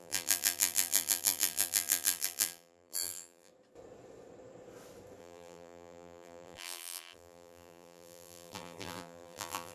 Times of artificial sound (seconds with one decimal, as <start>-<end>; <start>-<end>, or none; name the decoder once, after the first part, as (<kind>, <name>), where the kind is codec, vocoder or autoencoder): 0.0-3.5 (vocoder, BigVGAN v2); 5.2-9.7